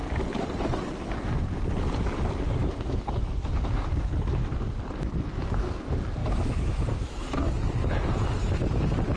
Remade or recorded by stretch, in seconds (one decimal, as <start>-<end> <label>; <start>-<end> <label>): 0.0-2.6 recorded; 2.6-3.3 remade; 3.3-6.2 recorded; 6.2-7.5 remade; 7.5-9.2 recorded